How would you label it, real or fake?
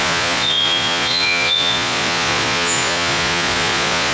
fake